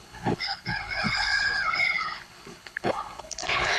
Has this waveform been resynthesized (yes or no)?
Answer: yes